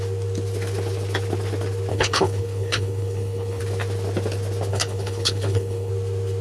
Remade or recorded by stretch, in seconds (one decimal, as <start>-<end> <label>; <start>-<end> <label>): 0.0-1.9 recorded; 1.9-3.6 remade; 3.6-4.7 recorded; 4.7-5.9 remade; 5.9-6.4 recorded